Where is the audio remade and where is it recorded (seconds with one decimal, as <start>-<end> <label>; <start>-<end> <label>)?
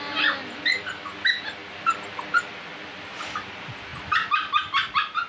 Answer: 0.0-5.3 recorded